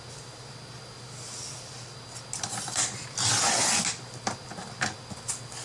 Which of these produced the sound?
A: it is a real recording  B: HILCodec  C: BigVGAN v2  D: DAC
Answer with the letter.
A